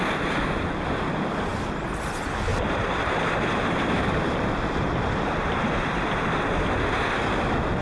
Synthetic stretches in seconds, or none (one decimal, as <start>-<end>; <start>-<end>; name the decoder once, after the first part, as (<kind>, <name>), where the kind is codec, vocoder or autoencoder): 2.5-5.6 (vocoder, BigVGAN v2)